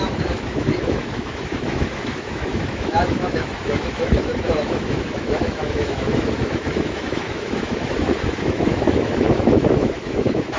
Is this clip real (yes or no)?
no